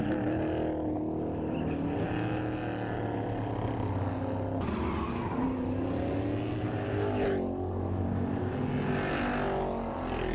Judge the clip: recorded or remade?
recorded